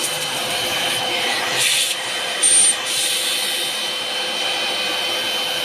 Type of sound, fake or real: real